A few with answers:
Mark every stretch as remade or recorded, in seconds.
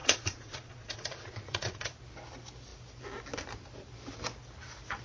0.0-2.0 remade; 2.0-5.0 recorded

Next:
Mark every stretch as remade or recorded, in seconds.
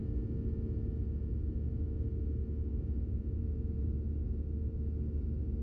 0.0-2.7 recorded; 2.7-3.9 remade; 3.9-5.6 recorded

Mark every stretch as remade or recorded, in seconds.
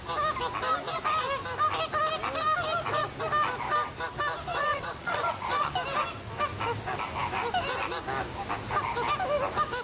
0.0-4.7 recorded; 4.7-5.7 remade; 5.7-9.8 recorded